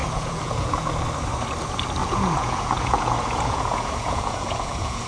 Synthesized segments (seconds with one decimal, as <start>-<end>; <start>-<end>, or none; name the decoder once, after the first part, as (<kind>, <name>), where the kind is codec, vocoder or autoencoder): 0.0-1.0 (vocoder, Vocos); 2.0-5.1